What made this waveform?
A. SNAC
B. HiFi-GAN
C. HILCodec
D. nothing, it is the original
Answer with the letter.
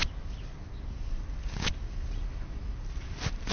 D